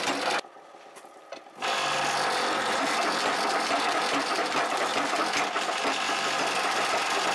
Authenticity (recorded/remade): recorded